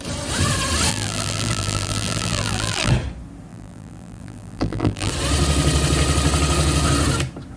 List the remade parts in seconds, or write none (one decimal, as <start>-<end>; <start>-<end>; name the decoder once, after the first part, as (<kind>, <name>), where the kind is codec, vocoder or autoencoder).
0.9-2.9 (vocoder, BigVGAN v2); 3.5-5.1